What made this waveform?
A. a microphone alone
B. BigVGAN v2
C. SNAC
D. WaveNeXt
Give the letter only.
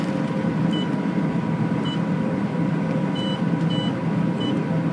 B